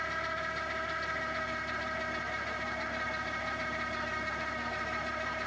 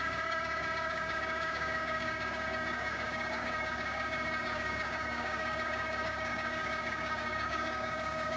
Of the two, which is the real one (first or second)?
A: first